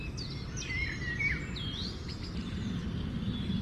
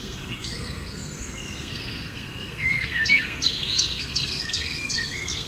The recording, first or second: first